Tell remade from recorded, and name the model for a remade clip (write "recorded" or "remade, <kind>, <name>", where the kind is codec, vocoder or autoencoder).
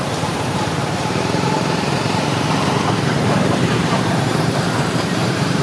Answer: remade, vocoder, BigVGAN v2